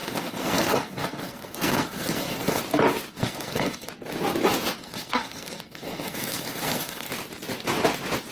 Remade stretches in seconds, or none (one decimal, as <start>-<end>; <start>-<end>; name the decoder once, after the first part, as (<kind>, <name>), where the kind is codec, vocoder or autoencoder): 0.0-2.6 (codec, SNAC); 3.1-3.9; 4.8-7.1